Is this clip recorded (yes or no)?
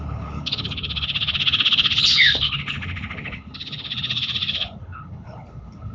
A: no